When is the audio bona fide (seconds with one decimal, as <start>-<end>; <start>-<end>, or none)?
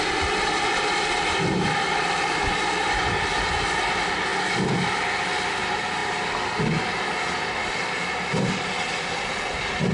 0.0-9.9